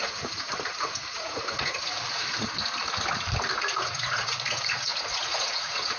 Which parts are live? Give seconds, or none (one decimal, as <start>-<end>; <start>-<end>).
2.0-4.0